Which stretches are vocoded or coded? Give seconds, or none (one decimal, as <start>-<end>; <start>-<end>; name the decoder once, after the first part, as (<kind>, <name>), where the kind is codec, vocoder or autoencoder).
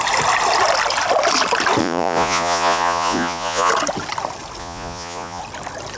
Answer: 1.8-3.7 (vocoder, Vocos); 4.6-5.4